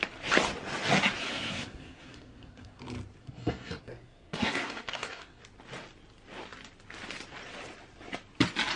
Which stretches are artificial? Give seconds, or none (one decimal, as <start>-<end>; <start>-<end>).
1.3-2.8; 3.2-5.4